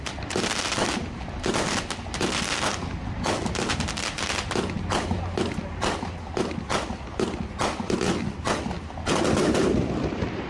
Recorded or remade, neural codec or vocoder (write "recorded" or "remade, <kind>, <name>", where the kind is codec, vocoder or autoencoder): recorded